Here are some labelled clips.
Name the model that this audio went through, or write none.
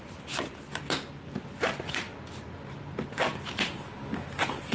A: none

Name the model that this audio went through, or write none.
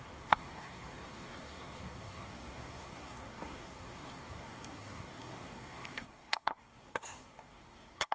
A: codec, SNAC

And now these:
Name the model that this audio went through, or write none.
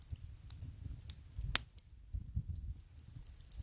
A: none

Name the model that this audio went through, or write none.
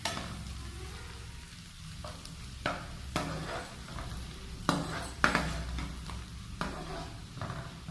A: none